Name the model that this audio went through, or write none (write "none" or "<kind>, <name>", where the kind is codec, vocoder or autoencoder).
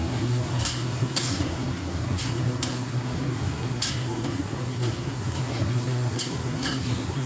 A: codec, SNAC